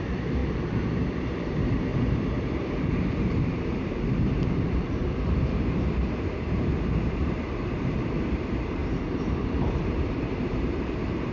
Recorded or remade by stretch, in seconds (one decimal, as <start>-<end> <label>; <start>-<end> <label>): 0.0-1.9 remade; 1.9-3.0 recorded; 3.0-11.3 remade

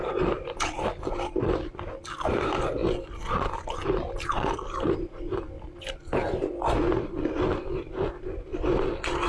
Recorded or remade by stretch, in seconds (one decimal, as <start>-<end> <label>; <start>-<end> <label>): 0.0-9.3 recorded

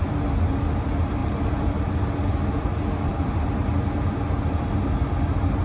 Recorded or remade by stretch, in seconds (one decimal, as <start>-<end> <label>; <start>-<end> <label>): 0.0-1.2 recorded; 1.2-1.9 remade; 1.9-3.1 recorded; 3.1-3.7 remade; 3.7-5.6 recorded

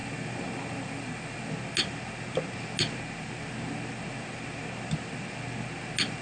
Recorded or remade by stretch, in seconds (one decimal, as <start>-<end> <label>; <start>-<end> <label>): 0.0-1.5 remade; 1.5-6.2 recorded

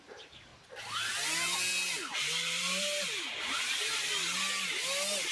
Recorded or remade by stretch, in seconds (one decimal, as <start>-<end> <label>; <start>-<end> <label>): 0.0-0.5 remade; 0.5-2.2 recorded; 2.2-3.9 remade; 3.9-5.3 recorded

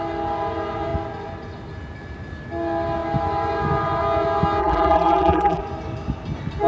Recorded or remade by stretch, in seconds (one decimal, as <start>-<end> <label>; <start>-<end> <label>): 0.0-4.6 recorded; 4.6-5.6 remade; 5.6-6.7 recorded